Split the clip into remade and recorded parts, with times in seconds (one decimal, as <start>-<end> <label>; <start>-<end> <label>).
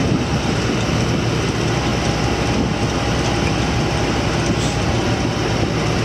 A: 0.0-0.6 remade; 0.6-6.0 recorded